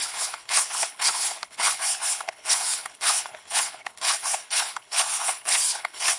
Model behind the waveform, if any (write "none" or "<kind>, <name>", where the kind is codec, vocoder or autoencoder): codec, HILCodec